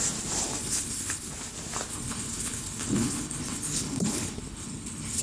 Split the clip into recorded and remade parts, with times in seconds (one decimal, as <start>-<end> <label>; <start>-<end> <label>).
0.0-0.6 recorded; 0.6-1.3 remade; 1.3-1.9 recorded; 1.9-5.2 remade